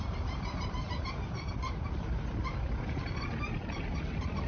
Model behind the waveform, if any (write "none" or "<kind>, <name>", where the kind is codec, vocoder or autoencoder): vocoder, BigVGAN v2